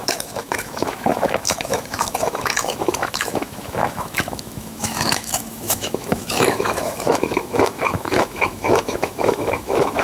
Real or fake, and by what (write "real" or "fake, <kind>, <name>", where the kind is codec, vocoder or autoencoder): fake, autoencoder, DAC-VAE